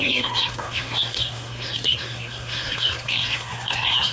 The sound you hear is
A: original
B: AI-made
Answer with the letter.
B